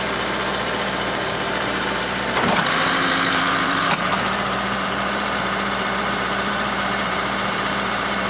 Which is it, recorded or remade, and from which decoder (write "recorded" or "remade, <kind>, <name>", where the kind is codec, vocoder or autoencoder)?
remade, vocoder, BigVGAN v2